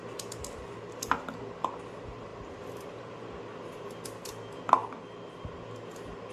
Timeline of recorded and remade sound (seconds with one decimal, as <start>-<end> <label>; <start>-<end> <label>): 0.0-2.3 recorded; 2.3-3.3 remade; 3.3-4.8 recorded; 4.8-5.4 remade; 5.4-6.3 recorded